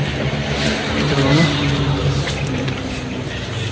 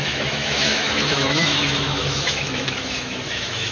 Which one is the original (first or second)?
first